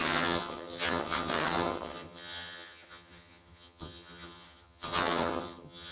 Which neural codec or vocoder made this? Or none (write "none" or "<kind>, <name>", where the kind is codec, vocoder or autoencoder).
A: vocoder, HiFi-GAN